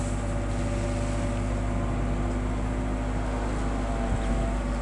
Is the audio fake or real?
real